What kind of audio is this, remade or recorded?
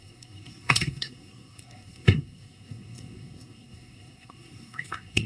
remade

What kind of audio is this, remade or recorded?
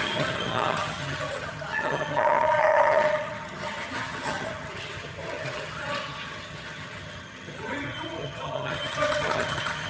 remade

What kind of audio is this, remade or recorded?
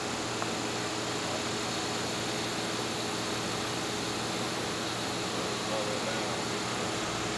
recorded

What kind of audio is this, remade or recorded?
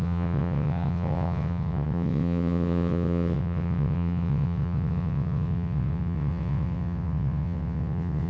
remade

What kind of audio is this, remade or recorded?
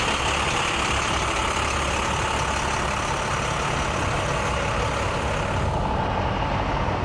recorded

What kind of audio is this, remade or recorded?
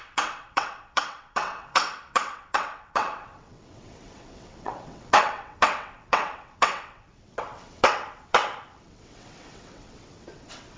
remade